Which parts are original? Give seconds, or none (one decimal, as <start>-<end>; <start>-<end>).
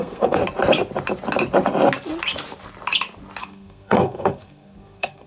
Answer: 0.4-3.4